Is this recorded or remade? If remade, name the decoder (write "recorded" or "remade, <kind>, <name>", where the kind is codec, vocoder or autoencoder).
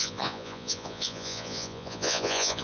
remade, vocoder, Vocos